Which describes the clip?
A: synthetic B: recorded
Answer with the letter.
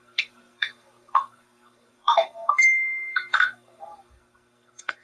A